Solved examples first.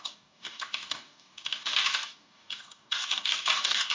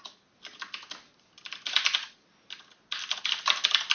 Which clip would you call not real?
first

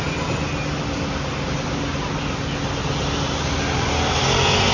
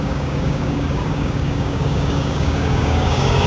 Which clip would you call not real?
second